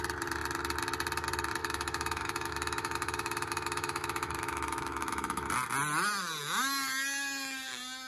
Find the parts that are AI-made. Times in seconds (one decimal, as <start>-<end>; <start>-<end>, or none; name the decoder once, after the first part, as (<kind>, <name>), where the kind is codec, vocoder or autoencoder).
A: 1.6-5.5 (autoencoder, DAC-VAE)